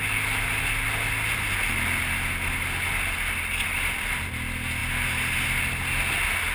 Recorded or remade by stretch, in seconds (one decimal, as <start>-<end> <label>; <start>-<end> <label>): 0.0-6.5 recorded

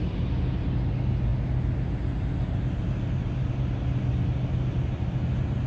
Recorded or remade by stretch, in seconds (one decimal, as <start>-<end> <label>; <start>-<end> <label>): 0.0-5.7 recorded

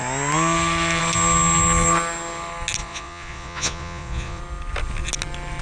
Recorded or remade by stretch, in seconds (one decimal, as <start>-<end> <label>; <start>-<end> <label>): 0.0-2.8 recorded; 2.8-4.4 remade; 4.4-5.6 recorded

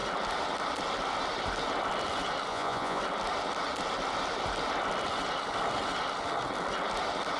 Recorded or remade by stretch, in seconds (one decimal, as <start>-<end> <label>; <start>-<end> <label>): 0.0-2.5 recorded; 2.5-3.0 remade; 3.0-7.4 recorded

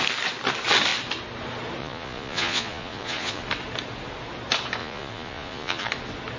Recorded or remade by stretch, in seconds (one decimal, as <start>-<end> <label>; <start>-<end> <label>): 0.0-1.8 recorded; 1.8-3.4 remade; 3.4-4.8 recorded; 4.8-5.9 remade; 5.9-6.4 recorded